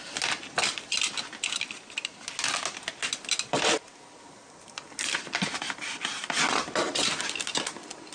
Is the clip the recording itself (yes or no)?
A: yes